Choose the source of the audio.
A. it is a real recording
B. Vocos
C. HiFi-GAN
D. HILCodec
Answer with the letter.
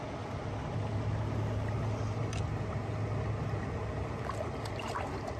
A